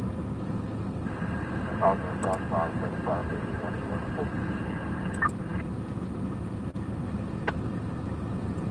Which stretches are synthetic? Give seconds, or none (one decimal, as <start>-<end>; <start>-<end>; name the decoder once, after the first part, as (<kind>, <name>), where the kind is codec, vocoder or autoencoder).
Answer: none